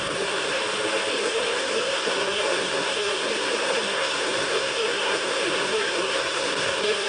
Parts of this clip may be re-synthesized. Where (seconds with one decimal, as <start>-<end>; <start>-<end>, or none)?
0.0-0.6; 1.1-7.1